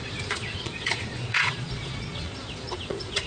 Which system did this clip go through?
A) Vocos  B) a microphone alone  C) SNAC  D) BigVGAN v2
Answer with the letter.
A